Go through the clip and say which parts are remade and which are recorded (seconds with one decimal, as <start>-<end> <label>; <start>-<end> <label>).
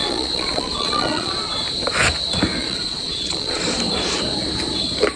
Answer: 0.0-1.6 remade; 1.6-2.6 recorded; 2.6-3.6 remade; 3.6-5.2 recorded